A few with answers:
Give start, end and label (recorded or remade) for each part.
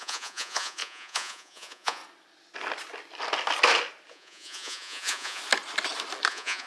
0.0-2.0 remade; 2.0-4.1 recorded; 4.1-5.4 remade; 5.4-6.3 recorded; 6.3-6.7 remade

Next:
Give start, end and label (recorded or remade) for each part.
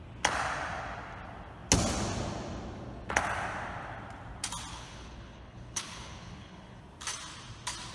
0.0-4.7 recorded; 4.7-6.8 remade; 6.8-7.9 recorded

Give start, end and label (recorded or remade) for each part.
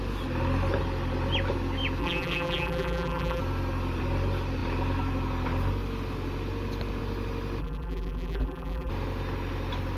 0.0-2.0 recorded; 2.0-3.4 remade; 3.4-7.6 recorded; 7.6-8.9 remade; 8.9-10.0 recorded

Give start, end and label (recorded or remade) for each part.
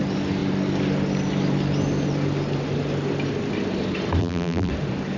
0.0-4.2 recorded; 4.2-4.7 remade; 4.7-5.2 recorded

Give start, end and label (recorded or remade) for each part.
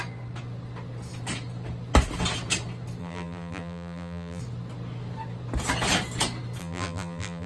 0.0-3.0 recorded; 3.0-4.4 remade; 4.4-6.6 recorded; 6.6-7.5 remade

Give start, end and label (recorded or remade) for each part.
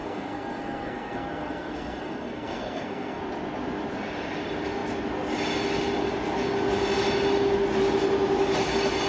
0.0-3.2 remade; 3.2-9.1 recorded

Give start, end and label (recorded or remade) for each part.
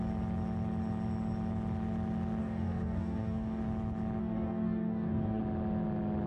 0.0-2.4 recorded; 2.4-3.6 remade; 3.6-4.2 recorded; 4.2-5.4 remade; 5.4-6.3 recorded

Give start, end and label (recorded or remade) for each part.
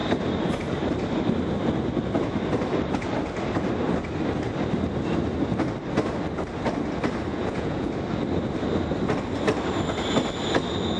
0.0-7.3 recorded; 7.3-7.9 remade; 7.9-11.0 recorded